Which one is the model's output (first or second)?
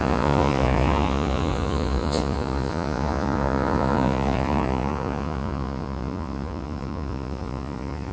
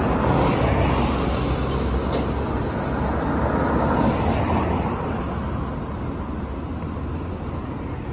first